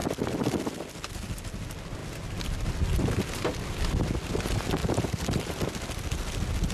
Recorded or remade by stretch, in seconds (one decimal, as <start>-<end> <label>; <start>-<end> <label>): 0.0-4.8 recorded; 4.8-5.6 remade; 5.6-6.7 recorded